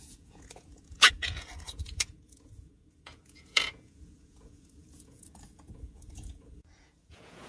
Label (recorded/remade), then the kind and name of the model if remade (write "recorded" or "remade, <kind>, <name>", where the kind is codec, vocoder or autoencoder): remade, vocoder, Vocos